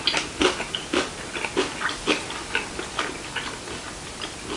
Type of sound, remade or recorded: recorded